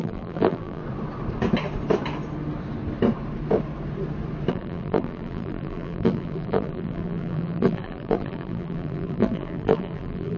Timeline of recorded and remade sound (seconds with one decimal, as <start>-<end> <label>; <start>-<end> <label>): 0.0-0.8 remade; 0.8-4.5 recorded; 4.5-10.4 remade